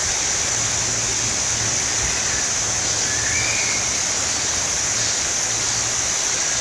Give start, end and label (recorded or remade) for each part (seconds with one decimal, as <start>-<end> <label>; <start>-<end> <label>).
0.0-6.6 recorded